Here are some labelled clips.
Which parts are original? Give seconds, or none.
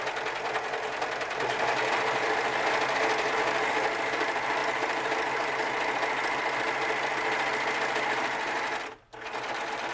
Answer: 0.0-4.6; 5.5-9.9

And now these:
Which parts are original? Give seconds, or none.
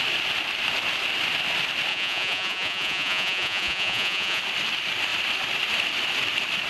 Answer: 0.0-1.9; 4.4-6.7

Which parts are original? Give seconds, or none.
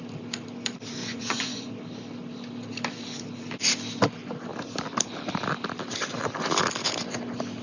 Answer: 0.0-1.0; 1.7-7.6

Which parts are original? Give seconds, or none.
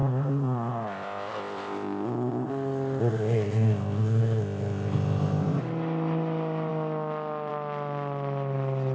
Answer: 2.5-3.0; 5.6-8.9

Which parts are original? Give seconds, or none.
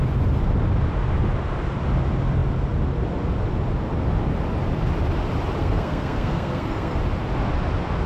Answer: 0.0-5.6; 7.0-8.1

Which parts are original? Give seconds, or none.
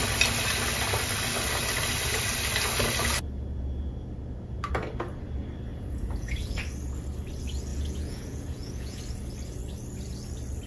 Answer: 0.0-5.7; 6.6-7.7; 9.0-10.7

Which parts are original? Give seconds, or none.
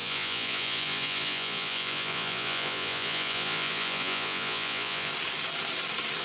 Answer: 5.1-6.2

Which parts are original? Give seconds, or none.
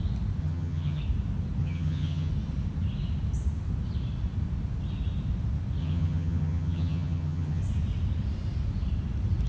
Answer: 0.0-0.4; 1.0-1.6; 2.3-5.8; 7.6-9.5